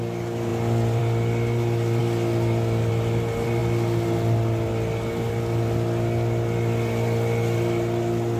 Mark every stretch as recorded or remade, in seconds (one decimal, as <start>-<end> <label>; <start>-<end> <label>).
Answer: 0.0-8.4 recorded